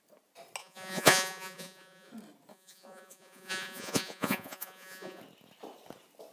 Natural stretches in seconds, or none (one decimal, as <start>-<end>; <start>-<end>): 0.0-0.6; 2.1-2.5; 5.2-6.3